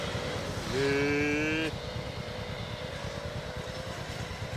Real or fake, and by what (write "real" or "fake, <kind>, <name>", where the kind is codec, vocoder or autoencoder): real